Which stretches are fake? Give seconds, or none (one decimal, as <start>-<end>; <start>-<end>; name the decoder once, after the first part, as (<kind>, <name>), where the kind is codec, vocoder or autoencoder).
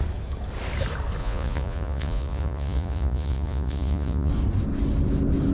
1.2-4.3 (vocoder, Vocos)